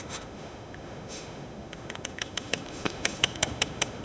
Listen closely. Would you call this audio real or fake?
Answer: fake